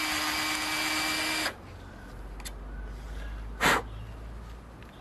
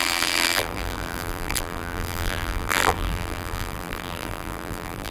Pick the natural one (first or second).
first